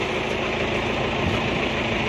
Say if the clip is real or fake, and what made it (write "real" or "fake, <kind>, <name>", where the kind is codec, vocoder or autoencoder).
real